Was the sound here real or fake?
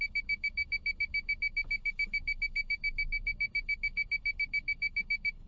fake